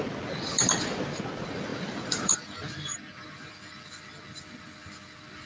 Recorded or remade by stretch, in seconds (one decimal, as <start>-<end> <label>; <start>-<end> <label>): 0.0-1.7 recorded; 1.7-3.5 remade; 3.5-5.5 recorded